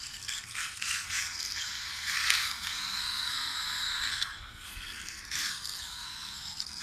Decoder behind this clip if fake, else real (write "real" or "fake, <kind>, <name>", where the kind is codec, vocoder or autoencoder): fake, codec, SNAC